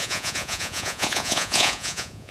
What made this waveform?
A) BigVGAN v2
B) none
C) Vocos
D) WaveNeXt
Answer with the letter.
C